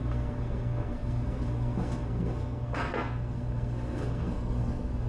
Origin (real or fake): fake